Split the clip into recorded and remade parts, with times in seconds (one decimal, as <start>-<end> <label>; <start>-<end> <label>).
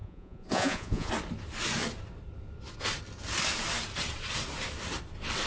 0.0-1.1 remade; 1.1-5.5 recorded